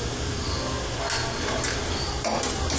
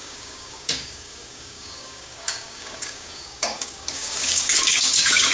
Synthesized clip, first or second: second